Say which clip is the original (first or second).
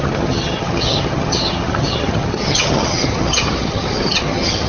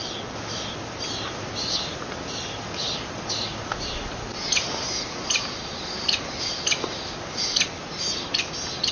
second